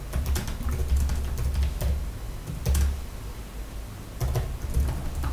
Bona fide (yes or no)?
yes